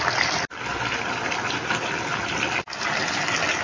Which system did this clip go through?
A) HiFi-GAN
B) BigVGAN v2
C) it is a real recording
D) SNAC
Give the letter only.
C